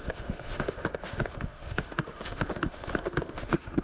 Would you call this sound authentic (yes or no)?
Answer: no